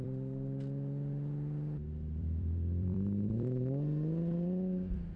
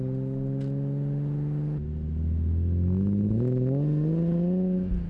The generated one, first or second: first